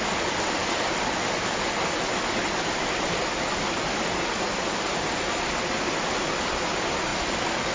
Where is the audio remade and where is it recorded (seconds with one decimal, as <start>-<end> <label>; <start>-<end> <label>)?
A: 0.0-7.7 recorded